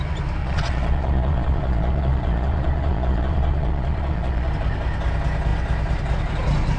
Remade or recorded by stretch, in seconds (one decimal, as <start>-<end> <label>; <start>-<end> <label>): 0.0-0.4 recorded; 0.4-4.5 remade; 4.5-6.8 recorded